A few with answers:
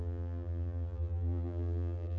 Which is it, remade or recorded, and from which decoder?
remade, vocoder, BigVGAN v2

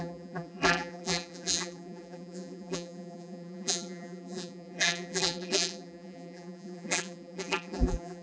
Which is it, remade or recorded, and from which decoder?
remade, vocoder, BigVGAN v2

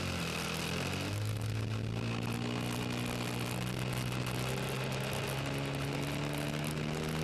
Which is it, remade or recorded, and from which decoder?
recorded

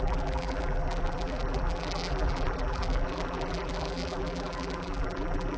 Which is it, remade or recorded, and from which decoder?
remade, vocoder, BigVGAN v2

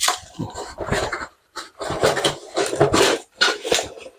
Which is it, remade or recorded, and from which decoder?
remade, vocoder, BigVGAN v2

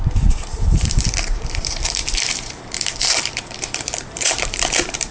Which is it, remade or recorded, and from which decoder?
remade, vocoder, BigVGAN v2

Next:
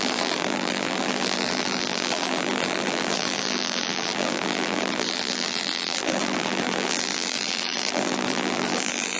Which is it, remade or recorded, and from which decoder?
remade, vocoder, BigVGAN v2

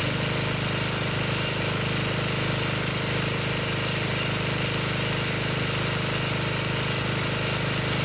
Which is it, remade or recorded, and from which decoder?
recorded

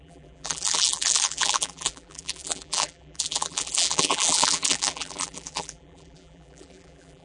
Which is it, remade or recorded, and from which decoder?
remade, vocoder, BigVGAN v2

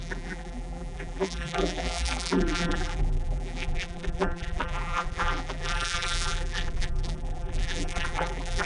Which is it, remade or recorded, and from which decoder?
remade, vocoder, BigVGAN v2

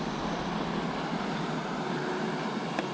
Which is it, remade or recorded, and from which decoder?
recorded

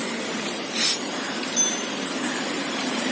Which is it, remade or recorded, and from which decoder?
remade, vocoder, BigVGAN v2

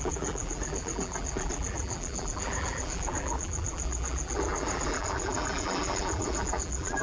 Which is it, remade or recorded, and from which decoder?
remade, vocoder, BigVGAN v2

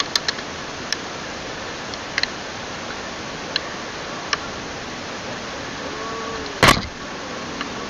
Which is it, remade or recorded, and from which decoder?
recorded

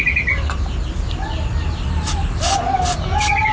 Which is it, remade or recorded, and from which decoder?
remade, vocoder, BigVGAN v2